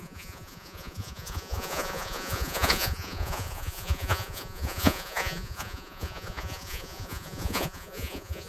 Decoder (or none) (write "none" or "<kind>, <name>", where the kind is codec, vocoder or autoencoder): vocoder, Vocos